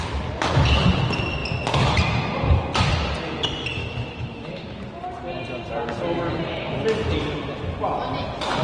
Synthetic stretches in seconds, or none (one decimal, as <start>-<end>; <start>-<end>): 3.8-4.8